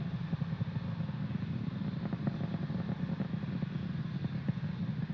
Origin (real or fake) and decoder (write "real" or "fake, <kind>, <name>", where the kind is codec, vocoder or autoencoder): real